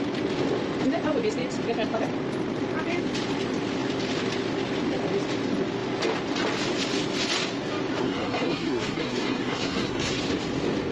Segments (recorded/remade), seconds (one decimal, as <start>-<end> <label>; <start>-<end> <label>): 0.0-8.0 recorded; 8.0-10.2 remade; 10.2-10.9 recorded